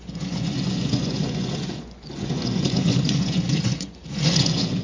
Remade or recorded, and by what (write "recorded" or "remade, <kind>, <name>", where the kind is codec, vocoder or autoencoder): remade, vocoder, Vocos